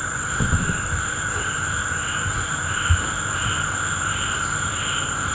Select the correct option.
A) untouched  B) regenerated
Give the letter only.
A